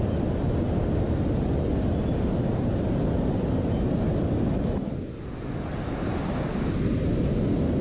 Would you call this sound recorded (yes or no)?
yes